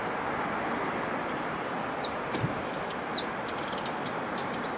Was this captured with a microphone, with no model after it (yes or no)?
yes